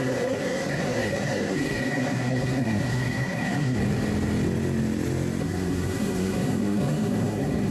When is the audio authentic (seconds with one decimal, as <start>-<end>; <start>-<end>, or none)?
3.8-5.4